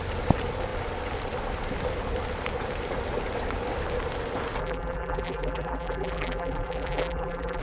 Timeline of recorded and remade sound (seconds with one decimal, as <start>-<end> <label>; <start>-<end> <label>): 0.0-4.6 recorded; 4.6-7.6 remade